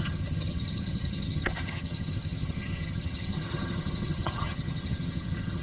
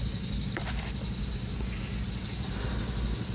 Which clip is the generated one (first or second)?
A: first